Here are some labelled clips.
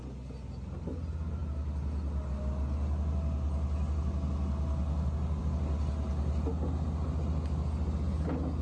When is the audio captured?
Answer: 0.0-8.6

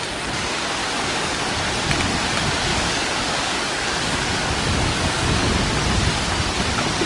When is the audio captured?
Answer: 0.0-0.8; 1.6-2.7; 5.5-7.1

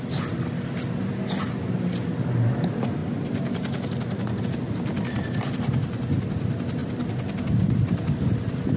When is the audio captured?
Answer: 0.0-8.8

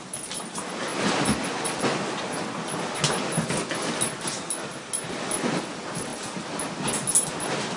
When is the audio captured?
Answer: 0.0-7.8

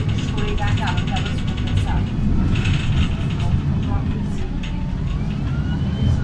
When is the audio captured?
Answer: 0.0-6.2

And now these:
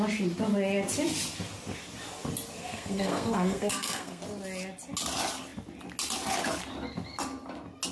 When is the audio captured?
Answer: 0.0-2.6; 4.2-7.9

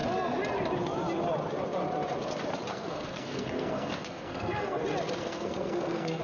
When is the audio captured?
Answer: 0.0-2.7; 4.8-5.2